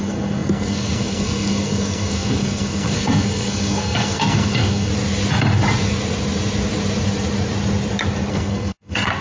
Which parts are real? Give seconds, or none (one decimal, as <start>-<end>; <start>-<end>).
4.9-8.3